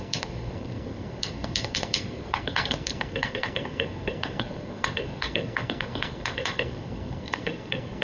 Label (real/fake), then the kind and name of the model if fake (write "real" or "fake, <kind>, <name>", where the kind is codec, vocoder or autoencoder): fake, codec, SNAC